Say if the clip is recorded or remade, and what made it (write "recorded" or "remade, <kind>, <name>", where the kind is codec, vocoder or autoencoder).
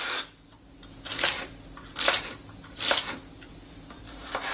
recorded